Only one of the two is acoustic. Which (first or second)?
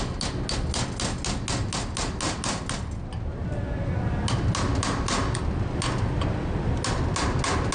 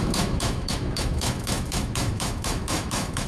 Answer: first